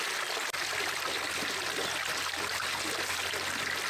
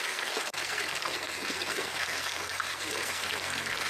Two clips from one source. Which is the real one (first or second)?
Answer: first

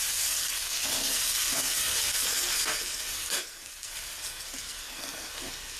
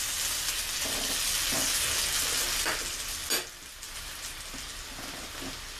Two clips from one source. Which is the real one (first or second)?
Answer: second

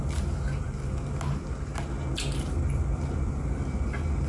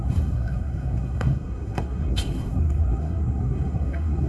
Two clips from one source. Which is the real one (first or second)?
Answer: first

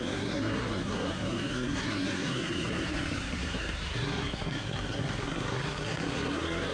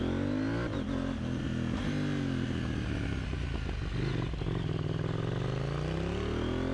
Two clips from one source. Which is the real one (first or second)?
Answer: second